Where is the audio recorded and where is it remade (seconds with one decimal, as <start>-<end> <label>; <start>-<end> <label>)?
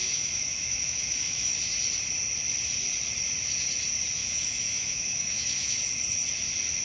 0.0-1.5 remade; 1.5-4.2 recorded; 4.2-5.8 remade; 5.8-6.8 recorded